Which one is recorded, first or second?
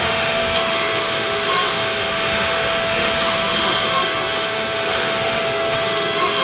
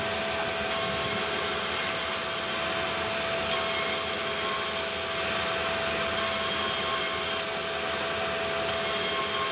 second